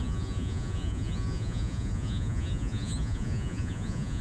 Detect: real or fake fake